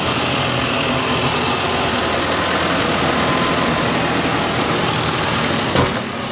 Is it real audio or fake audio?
real